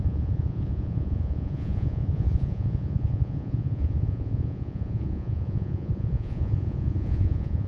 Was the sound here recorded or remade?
remade